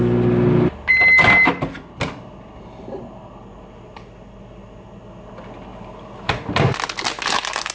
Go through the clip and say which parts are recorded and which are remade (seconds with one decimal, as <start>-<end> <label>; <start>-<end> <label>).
0.0-7.7 recorded